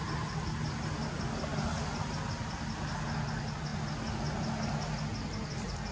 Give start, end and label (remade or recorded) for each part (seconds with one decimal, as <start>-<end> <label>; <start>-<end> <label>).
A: 0.0-5.9 recorded